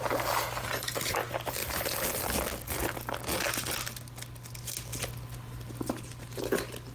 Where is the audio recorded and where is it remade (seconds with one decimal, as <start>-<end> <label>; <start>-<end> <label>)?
0.0-6.9 recorded